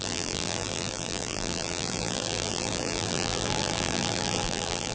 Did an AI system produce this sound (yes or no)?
yes